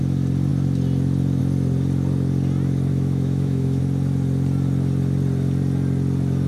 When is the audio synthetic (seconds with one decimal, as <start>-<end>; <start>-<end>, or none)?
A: 2.9-3.8